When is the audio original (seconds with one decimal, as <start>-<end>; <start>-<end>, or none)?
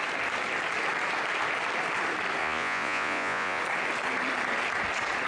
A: 0.0-2.4; 3.6-5.3